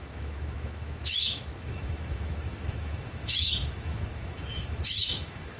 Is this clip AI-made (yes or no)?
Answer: yes